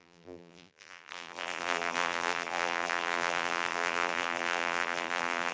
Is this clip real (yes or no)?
no